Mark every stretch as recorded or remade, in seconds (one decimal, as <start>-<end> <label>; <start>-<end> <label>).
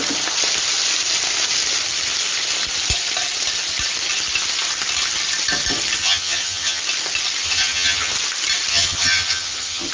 0.0-6.0 recorded; 6.0-6.8 remade; 6.8-7.4 recorded; 7.4-8.1 remade; 8.1-8.7 recorded; 8.7-9.9 remade